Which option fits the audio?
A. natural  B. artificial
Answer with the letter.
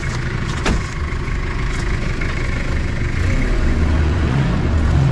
B